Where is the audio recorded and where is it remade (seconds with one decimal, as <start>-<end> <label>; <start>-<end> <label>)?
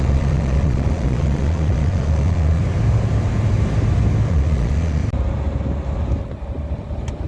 0.0-2.6 remade; 2.6-4.3 recorded; 4.3-5.0 remade; 5.0-7.3 recorded